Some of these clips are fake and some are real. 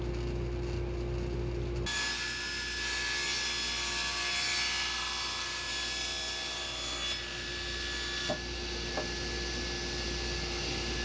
real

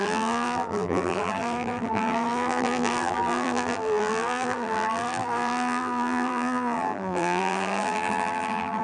fake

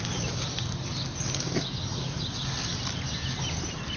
real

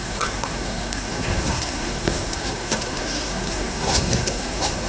fake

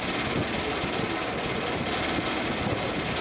real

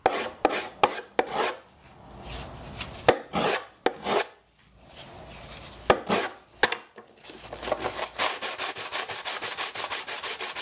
real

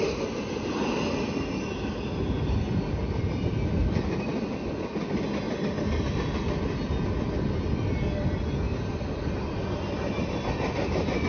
real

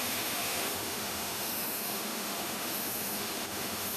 fake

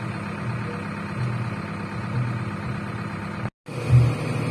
real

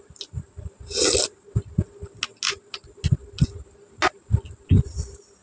real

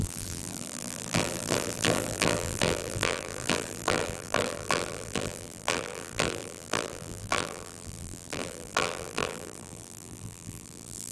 fake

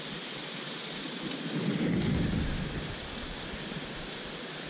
fake